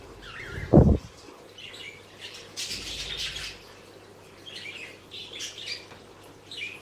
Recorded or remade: recorded